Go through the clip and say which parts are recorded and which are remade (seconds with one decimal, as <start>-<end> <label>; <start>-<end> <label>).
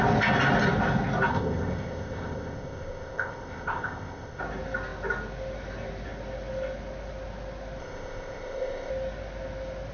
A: 0.0-1.3 recorded; 1.3-4.4 remade; 4.4-7.8 recorded; 7.8-8.9 remade; 8.9-9.9 recorded